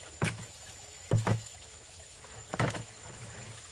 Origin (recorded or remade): remade